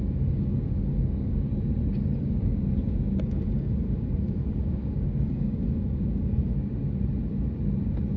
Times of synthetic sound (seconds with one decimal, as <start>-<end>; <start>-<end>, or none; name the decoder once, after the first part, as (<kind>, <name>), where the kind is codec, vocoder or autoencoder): 0.0-1.5 (codec, DAC); 2.2-2.6; 3.2-6.5